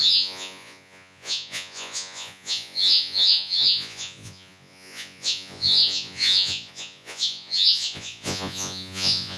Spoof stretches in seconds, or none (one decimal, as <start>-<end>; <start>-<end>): 0.0-9.4